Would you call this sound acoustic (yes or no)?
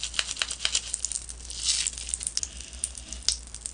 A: yes